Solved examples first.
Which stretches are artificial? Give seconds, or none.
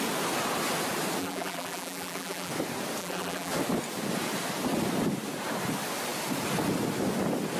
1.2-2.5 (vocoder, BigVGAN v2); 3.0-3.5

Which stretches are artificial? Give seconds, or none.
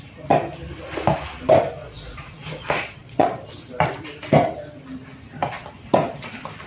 1.8-3.4 (vocoder, Vocos)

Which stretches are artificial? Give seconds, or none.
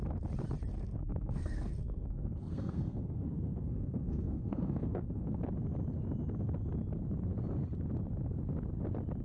0.7-5.4 (codec, SNAC)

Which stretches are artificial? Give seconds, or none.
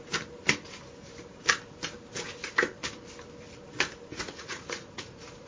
4.1-5.5 (vocoder, Vocos)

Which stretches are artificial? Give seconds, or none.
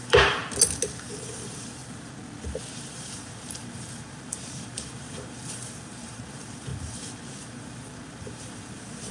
0.0-0.4 (vocoder, BigVGAN v2); 1.0-1.8; 2.7-9.1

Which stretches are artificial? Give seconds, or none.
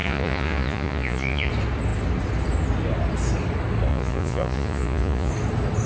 0.0-1.5 (vocoder, Vocos); 3.9-5.3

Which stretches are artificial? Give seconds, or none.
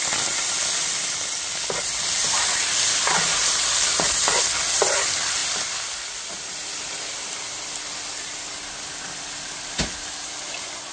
none